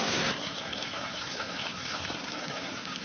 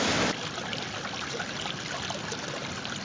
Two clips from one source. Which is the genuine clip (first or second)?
second